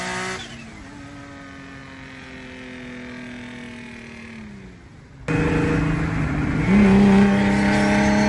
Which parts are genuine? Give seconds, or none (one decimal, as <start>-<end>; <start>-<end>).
0.0-8.3